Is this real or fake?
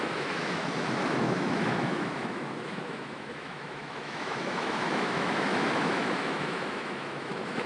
fake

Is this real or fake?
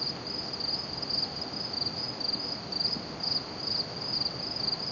real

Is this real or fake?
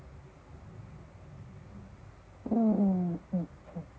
real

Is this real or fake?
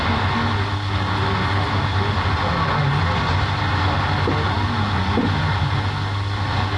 real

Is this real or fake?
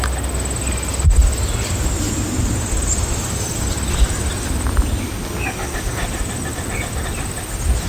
real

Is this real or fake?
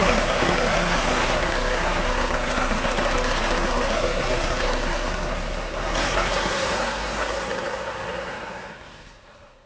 fake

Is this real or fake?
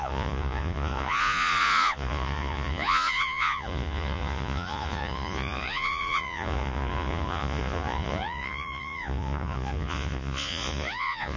fake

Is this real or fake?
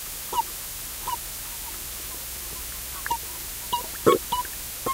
real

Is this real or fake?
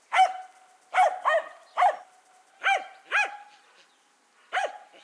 real